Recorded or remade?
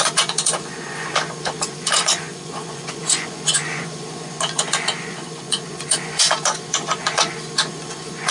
remade